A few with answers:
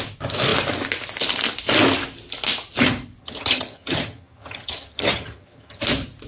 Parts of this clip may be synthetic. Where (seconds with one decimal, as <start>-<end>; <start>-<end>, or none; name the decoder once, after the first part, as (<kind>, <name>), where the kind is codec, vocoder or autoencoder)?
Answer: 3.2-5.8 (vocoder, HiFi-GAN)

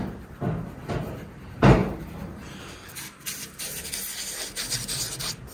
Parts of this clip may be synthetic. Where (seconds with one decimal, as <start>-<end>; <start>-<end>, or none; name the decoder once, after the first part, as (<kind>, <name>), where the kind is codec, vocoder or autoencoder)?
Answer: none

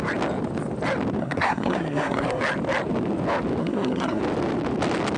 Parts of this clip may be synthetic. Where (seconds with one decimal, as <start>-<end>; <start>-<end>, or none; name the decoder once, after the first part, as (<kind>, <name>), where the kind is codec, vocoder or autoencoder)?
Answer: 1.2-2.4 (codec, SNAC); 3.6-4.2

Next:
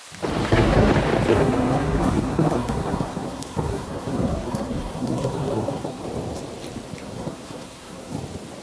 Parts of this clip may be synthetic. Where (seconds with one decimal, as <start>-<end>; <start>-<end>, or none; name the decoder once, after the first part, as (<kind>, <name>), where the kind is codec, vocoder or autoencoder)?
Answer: 0.4-0.9 (codec, SNAC); 1.3-6.0; 7.0-8.2

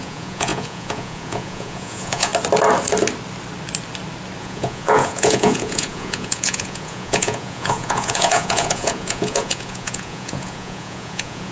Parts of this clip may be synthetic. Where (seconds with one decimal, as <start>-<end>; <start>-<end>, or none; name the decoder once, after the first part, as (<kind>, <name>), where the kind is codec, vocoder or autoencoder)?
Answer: 0.0-2.3 (vocoder, Vocos); 4.4-11.5

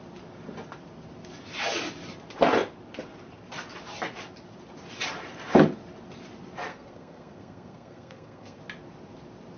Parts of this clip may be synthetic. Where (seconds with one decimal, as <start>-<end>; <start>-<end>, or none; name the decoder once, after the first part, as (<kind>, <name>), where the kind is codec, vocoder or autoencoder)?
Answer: 6.7-8.6 (codec, SNAC)